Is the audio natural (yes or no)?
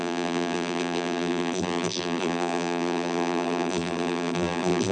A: no